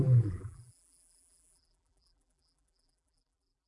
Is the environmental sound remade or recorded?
remade